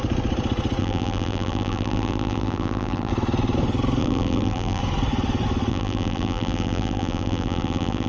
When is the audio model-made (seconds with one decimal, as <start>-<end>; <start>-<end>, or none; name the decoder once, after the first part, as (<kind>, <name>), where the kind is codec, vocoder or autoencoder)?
0.8-3.1 (vocoder, BigVGAN v2); 4.0-4.8; 5.7-8.1